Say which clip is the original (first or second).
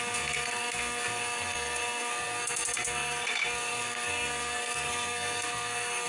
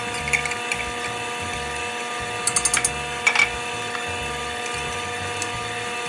second